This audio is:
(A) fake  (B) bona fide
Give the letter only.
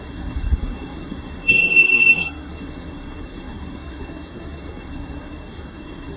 A